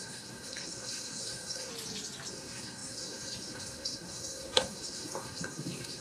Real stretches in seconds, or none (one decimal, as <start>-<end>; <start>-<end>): 1.7-2.3